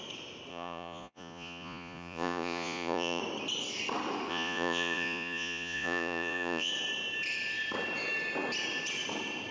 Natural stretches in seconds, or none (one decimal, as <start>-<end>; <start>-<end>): 0.0-0.5; 3.2-4.3; 6.7-9.5